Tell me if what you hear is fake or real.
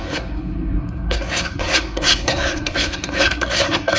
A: fake